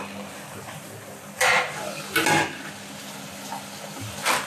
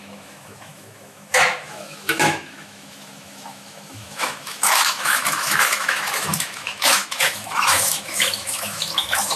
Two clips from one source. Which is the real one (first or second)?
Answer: first